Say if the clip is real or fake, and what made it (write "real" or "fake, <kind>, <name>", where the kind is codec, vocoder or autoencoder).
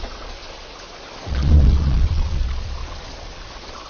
fake, vocoder, Vocos